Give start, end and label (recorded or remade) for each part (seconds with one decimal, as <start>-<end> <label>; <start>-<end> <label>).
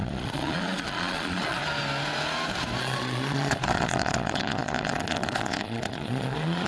0.0-1.6 remade; 1.6-2.8 recorded; 2.8-6.7 remade